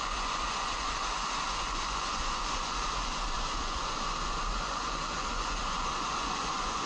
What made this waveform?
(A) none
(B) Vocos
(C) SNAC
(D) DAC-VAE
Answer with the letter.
B